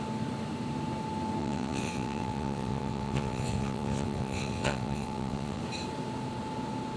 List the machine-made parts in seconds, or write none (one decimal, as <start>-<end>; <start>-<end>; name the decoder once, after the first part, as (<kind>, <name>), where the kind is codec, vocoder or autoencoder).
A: 1.4-5.6 (vocoder, WaveNeXt)